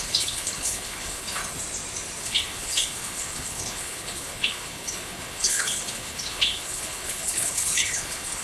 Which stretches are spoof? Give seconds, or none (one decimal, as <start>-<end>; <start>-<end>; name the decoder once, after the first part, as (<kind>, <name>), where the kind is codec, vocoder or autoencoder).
0.0-1.4 (codec, HILCodec); 2.2-8.4